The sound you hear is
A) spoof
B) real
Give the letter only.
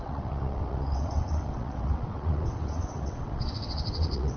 A